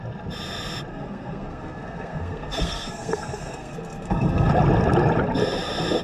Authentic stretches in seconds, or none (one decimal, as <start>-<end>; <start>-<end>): 0.0-0.9; 4.5-6.0